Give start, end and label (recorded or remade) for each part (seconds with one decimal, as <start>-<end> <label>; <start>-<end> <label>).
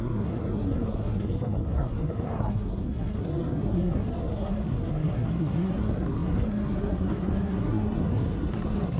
0.0-9.0 remade